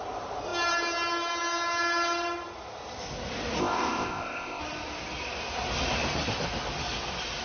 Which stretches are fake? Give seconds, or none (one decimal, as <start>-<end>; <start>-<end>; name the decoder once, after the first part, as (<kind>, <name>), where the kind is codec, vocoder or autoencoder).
3.6-4.6 (codec, ZipCodec)